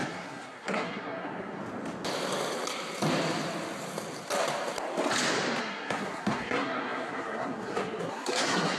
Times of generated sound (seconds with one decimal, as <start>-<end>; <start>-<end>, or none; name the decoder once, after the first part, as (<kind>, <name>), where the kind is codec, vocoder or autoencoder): 0.0-1.6 (codec, SNAC); 5.6-8.8